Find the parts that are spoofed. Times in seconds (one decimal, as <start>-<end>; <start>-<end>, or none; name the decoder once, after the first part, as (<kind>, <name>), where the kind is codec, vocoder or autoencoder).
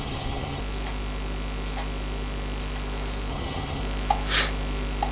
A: 0.0-0.6 (vocoder, HiFi-GAN); 3.3-3.8